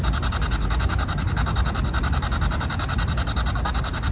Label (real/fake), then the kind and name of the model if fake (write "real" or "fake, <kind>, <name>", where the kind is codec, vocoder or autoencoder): real